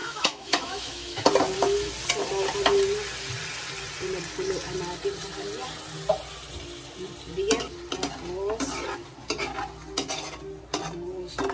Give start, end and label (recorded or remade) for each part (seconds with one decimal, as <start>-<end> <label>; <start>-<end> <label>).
0.0-1.2 remade; 1.2-11.5 recorded